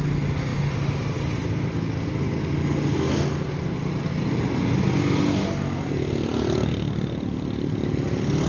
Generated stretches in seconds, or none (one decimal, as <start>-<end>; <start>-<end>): 4.1-5.2

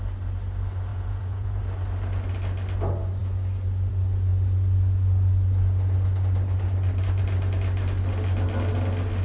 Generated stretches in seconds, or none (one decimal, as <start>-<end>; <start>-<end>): 0.9-1.6

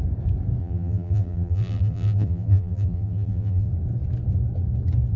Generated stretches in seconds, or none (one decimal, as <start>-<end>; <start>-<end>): 0.6-3.7

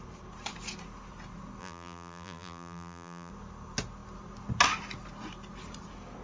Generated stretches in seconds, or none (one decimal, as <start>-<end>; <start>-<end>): 1.6-3.3